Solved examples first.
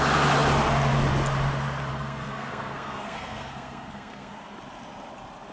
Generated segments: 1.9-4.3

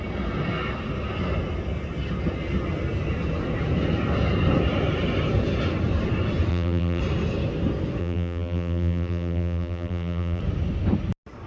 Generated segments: 6.5-7.0; 8.0-10.4